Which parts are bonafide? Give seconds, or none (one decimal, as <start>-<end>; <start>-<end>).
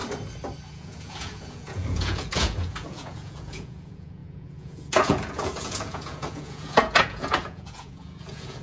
0.0-0.7